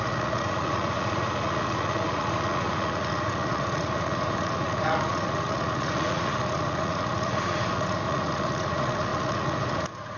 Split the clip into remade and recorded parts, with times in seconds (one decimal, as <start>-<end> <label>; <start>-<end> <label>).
0.0-10.2 remade